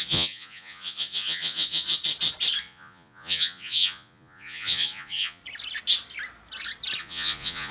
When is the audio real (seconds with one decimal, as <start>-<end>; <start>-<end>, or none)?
1.9-2.6; 5.4-7.0